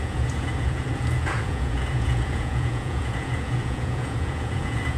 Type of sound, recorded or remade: remade